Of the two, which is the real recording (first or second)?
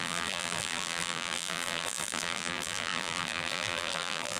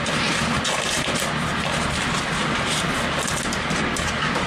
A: second